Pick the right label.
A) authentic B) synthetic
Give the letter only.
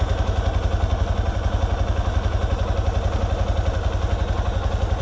A